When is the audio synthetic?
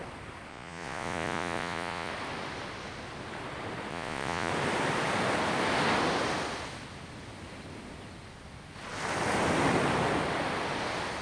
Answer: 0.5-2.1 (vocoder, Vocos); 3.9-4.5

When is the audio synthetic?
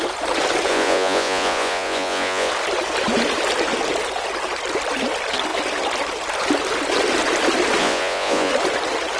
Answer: 0.7-2.5 (vocoder, Vocos); 7.8-8.5